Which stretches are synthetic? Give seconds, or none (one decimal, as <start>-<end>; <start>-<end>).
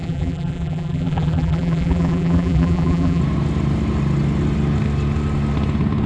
0.0-3.2